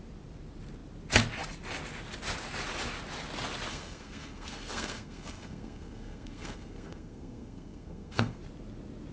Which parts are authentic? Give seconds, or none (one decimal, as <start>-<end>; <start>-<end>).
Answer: 0.0-3.7; 8.4-9.1